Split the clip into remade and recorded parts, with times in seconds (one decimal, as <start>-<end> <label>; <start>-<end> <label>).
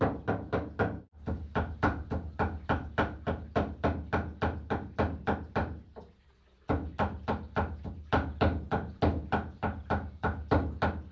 0.0-11.1 recorded